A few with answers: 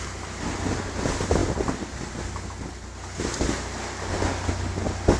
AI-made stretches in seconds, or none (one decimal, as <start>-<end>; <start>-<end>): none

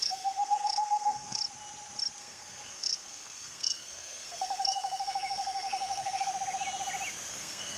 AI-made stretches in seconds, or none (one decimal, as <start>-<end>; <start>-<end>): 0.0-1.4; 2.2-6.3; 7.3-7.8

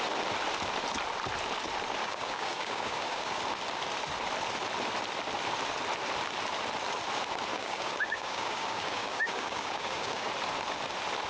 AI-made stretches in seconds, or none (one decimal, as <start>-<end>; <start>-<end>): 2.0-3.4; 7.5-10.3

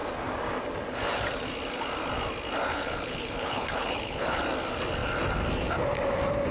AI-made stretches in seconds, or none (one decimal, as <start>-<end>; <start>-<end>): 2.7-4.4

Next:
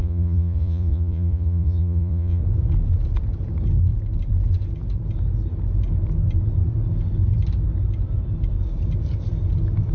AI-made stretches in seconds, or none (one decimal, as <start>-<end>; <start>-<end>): 0.0-2.4

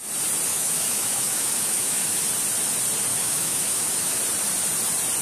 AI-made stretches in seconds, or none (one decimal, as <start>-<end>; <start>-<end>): 0.5-2.2; 3.1-4.2